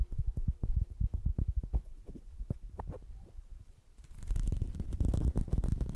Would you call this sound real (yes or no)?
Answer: no